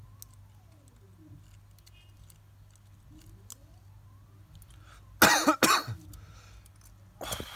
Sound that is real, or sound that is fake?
real